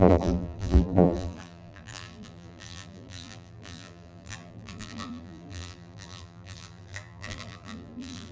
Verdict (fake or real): fake